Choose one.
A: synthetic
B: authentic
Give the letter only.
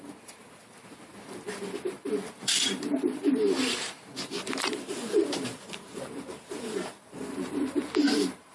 A